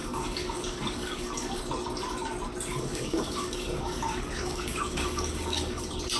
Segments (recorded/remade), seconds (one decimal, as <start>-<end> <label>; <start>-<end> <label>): 0.0-1.6 remade; 1.6-2.7 recorded; 2.7-5.8 remade; 5.8-6.2 recorded